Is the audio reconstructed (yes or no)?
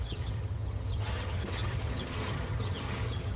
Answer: yes